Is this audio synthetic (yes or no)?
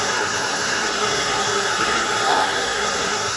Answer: yes